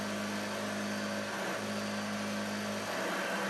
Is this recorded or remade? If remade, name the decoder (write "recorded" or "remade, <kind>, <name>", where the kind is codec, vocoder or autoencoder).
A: recorded